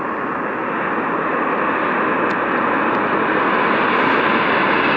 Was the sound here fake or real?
real